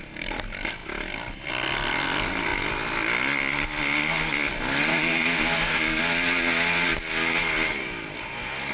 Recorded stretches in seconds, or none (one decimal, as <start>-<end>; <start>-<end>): 0.0-4.9; 6.0-8.7